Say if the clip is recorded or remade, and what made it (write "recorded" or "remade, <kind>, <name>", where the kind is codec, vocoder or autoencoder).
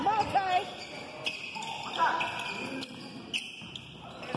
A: recorded